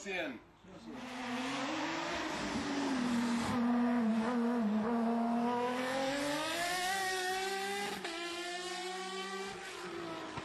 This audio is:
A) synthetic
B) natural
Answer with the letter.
B